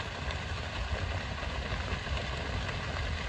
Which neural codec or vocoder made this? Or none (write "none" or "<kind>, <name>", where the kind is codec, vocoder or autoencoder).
none